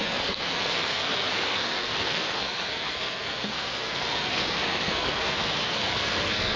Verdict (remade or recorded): remade